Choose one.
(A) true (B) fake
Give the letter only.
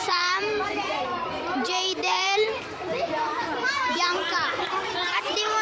B